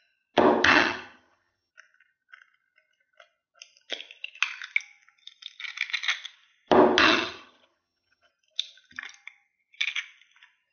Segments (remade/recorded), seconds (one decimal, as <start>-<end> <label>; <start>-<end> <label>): 0.0-0.7 recorded; 0.7-1.7 remade; 1.7-7.0 recorded; 7.0-8.3 remade; 8.3-10.7 recorded

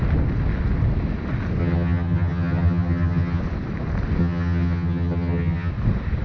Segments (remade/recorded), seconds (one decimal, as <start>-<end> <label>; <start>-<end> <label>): 0.0-1.6 recorded; 1.6-3.4 remade; 3.4-4.2 recorded; 4.2-5.7 remade; 5.7-6.2 recorded